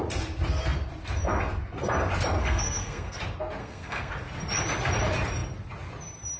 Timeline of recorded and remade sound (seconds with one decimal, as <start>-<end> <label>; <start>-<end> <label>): 0.0-2.4 recorded; 2.4-3.2 remade; 3.2-3.6 recorded; 3.6-4.1 remade; 4.1-6.4 recorded